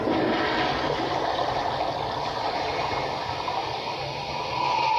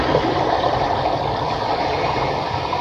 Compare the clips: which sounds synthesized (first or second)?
second